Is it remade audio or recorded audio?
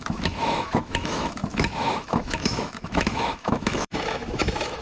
remade